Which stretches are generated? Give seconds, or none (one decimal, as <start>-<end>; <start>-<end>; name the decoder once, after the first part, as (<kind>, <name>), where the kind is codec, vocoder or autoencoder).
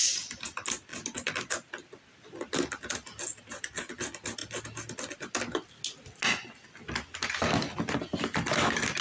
none